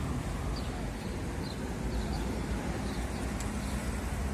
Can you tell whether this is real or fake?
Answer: real